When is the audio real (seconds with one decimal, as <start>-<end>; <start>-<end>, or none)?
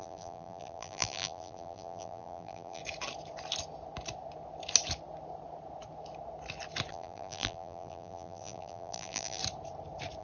2.8-6.9; 9.4-10.2